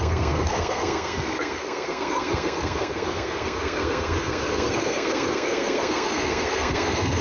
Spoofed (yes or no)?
yes